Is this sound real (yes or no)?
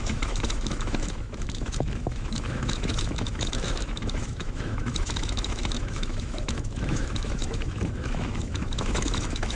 no